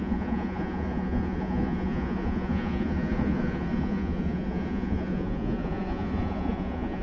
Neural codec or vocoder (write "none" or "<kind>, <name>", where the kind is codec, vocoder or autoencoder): vocoder, Vocos